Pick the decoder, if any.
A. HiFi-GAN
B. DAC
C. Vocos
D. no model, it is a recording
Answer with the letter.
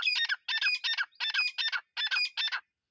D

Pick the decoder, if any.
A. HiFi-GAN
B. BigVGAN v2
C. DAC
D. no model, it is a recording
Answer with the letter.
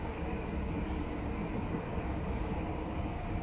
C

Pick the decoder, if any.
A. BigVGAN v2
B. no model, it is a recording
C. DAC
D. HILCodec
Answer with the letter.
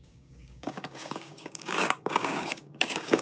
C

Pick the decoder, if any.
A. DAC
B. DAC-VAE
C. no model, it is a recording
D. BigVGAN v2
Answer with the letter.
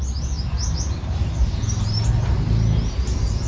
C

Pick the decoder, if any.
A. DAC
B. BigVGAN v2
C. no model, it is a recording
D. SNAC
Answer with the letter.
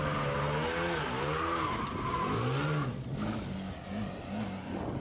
C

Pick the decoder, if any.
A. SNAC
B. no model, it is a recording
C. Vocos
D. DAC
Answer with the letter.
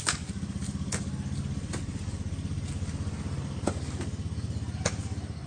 B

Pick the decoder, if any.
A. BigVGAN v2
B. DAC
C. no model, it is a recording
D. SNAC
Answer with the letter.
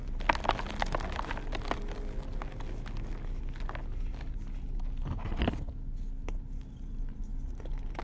C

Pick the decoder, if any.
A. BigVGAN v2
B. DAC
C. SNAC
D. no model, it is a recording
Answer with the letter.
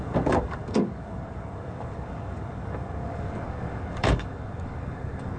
B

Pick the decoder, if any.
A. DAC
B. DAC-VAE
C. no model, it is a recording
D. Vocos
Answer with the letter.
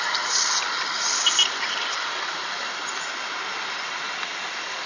C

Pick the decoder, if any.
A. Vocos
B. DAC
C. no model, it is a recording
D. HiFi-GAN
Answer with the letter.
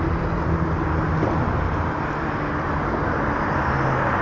C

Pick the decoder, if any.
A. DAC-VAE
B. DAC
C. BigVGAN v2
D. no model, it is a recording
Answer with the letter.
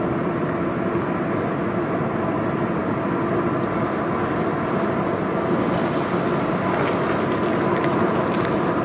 D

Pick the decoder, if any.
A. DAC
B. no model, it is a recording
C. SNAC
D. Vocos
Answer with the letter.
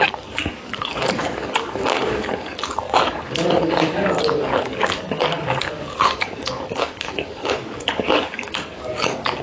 A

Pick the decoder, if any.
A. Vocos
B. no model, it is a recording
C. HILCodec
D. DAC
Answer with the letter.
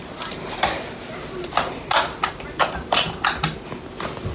B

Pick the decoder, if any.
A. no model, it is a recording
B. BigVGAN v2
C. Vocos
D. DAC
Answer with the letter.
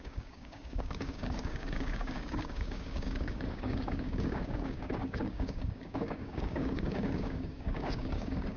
D